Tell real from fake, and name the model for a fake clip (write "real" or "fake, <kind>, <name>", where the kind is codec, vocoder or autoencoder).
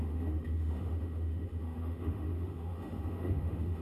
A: fake, autoencoder, DAC-VAE